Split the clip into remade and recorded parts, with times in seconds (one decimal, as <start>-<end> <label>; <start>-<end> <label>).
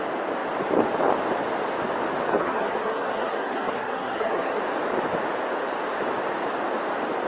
0.0-2.3 recorded; 2.3-4.6 remade; 4.6-7.3 recorded